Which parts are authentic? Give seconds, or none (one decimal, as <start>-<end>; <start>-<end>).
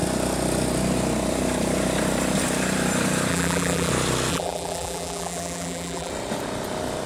0.0-3.3; 3.9-4.3; 6.1-7.1